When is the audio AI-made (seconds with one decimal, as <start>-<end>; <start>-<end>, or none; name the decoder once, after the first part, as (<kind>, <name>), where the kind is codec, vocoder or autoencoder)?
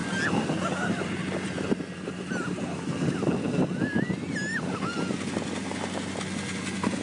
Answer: none